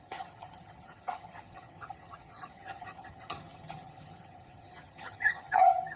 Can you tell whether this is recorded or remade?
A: remade